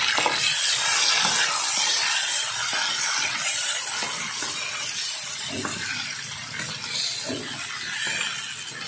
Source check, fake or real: real